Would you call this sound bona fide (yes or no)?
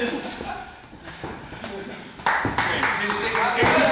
yes